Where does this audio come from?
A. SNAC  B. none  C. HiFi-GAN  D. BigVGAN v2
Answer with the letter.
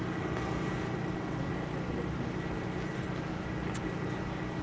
B